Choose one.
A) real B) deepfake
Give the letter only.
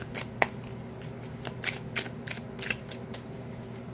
A